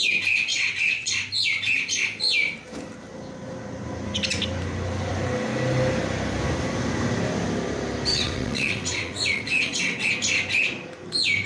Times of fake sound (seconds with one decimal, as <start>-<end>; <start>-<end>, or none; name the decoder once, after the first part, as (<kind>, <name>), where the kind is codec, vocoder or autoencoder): 0.5-1.1 (vocoder, WaveNeXt); 8.1-10.1